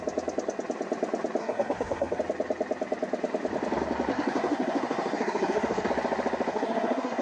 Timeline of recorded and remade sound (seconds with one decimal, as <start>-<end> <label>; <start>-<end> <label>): 0.0-1.4 recorded; 1.4-2.2 remade; 2.2-4.1 recorded; 4.1-5.9 remade; 5.9-6.5 recorded; 6.5-7.2 remade